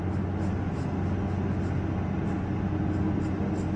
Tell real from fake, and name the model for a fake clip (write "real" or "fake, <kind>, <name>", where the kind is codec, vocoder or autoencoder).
real